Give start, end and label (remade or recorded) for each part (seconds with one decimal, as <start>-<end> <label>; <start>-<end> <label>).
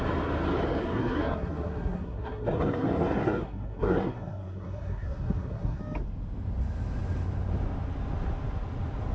0.0-0.8 recorded; 0.8-5.8 remade; 5.8-9.1 recorded